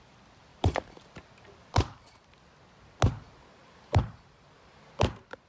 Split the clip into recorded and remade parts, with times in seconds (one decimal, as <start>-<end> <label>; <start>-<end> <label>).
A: 0.0-0.5 recorded; 0.5-1.1 remade; 1.1-3.5 recorded; 3.5-4.8 remade; 4.8-5.5 recorded